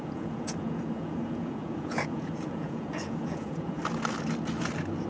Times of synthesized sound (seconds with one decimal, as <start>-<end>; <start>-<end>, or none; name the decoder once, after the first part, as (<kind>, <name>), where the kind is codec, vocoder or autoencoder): 0.0-3.8 (vocoder, Vocos)